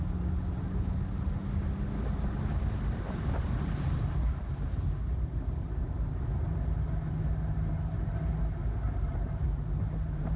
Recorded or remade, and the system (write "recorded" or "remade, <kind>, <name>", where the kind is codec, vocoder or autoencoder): recorded